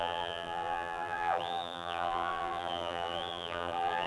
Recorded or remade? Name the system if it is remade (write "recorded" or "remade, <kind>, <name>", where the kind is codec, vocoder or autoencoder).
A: remade, vocoder, BigVGAN v2